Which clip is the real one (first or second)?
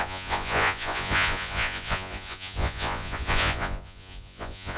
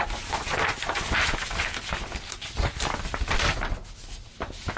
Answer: second